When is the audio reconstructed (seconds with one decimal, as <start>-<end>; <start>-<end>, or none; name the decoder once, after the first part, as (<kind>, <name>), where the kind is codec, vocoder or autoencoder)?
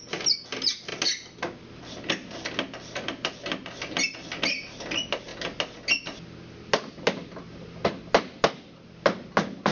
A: none